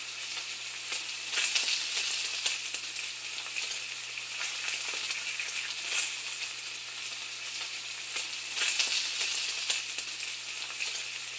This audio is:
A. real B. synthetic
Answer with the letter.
A